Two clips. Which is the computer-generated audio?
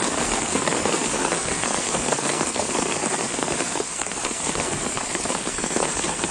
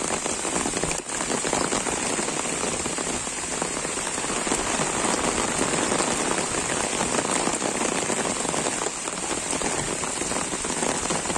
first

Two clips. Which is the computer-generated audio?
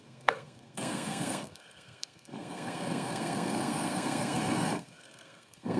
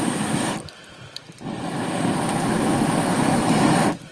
first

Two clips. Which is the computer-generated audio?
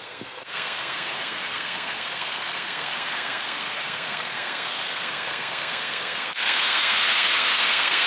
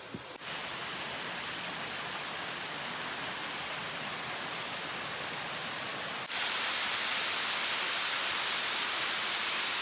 first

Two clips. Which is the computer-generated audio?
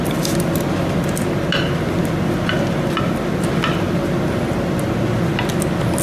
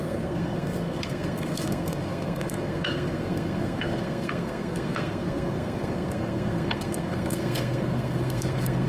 second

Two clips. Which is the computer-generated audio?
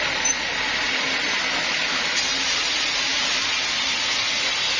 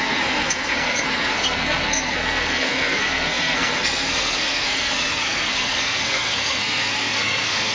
second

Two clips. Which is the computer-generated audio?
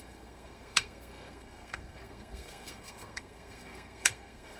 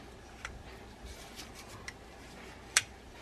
first